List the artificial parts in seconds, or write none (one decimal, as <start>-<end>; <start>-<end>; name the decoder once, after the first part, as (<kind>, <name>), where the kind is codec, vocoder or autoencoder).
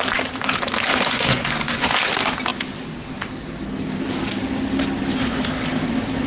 0.9-1.9 (vocoder, Vocos)